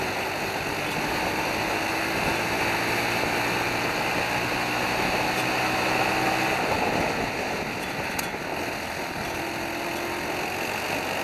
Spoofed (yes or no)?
no